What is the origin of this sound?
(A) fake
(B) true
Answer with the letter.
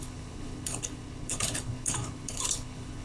A